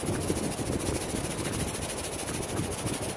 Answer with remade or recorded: recorded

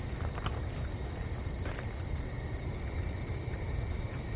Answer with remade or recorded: recorded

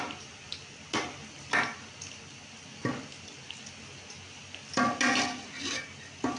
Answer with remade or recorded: recorded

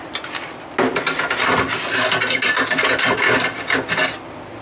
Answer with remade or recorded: recorded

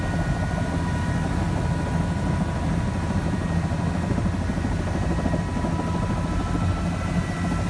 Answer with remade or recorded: recorded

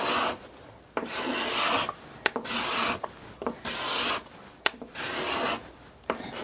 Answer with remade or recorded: recorded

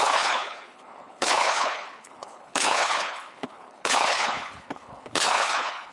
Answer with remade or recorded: remade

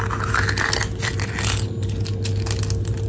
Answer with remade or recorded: recorded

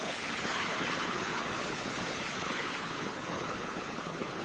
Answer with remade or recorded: remade